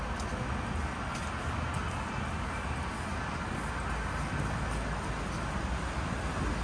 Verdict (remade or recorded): recorded